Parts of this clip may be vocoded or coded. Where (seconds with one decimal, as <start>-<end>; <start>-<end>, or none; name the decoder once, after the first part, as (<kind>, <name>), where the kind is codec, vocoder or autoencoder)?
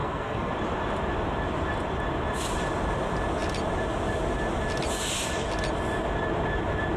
0.0-0.5 (codec, SNAC)